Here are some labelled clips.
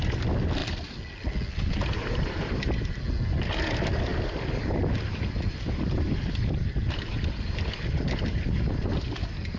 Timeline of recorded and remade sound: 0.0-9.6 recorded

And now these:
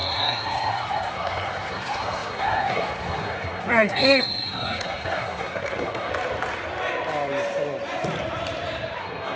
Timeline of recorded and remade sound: 0.0-6.1 remade; 6.1-9.0 recorded; 9.0-9.4 remade

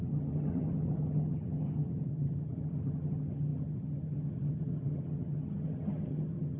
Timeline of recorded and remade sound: 0.0-6.6 remade

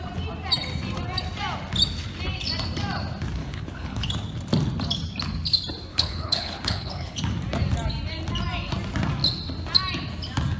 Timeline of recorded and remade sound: 0.0-3.4 recorded; 3.4-4.1 remade; 4.1-5.9 recorded; 5.9-7.2 remade; 7.2-10.6 recorded

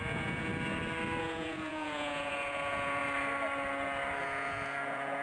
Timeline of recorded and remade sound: 0.0-0.5 remade; 0.5-1.2 recorded; 1.2-3.0 remade; 3.0-4.2 recorded; 4.2-5.2 remade

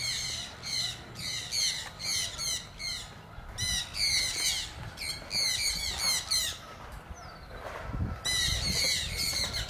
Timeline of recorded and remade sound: 0.0-9.7 recorded

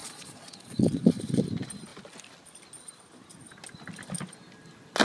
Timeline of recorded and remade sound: 0.0-1.4 remade; 1.4-5.0 recorded